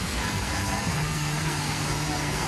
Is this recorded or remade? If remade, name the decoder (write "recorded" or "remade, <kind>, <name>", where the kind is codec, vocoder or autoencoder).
remade, codec, SNAC